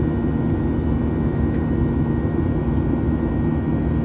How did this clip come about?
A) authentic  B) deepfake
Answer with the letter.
A